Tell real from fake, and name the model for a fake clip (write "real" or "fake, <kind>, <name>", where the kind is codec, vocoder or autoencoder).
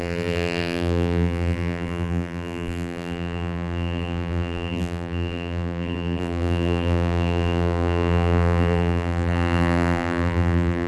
fake, vocoder, BigVGAN v2